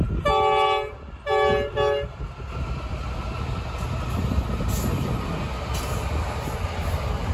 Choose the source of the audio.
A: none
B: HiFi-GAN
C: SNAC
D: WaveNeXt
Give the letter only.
A